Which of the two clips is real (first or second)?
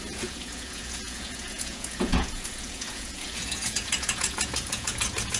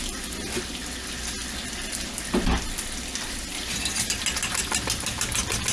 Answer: second